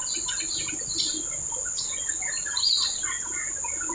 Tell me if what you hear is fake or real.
real